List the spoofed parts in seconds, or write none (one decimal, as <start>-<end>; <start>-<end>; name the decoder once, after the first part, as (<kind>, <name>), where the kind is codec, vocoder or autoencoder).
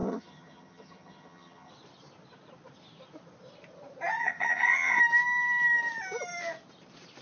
0.0-1.7 (vocoder, HiFi-GAN); 4.2-5.0